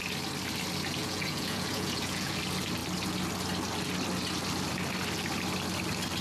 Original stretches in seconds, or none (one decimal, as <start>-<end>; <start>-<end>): 0.0-1.0; 2.4-6.2